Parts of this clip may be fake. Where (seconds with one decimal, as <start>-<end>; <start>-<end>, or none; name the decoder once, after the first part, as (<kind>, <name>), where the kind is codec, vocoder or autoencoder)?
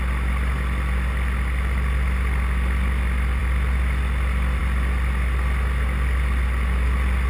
none